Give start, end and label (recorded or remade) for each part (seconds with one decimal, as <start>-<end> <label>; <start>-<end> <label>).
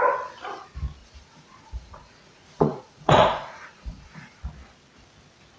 0.0-1.0 recorded; 1.0-4.4 remade; 4.4-5.6 recorded